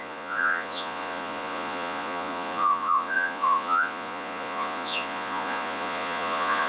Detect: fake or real fake